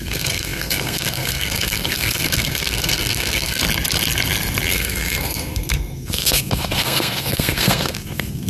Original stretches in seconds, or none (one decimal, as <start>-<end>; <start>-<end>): 3.6-4.7